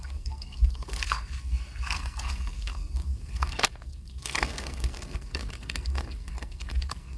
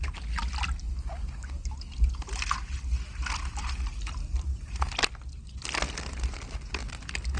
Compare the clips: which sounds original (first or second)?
second